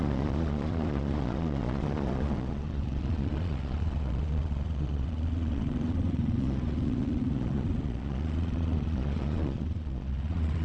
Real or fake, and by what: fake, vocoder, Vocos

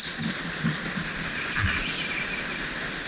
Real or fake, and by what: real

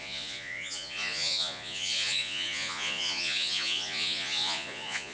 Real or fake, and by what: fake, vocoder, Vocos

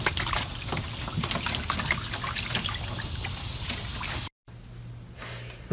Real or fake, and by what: real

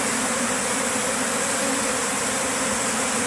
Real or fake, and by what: real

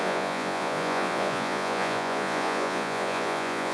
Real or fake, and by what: fake, vocoder, Vocos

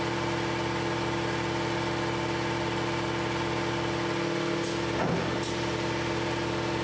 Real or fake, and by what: real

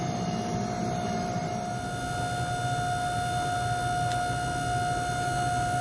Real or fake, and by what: real